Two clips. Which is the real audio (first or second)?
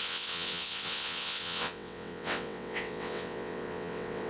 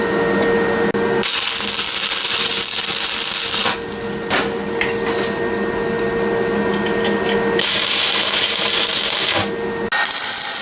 second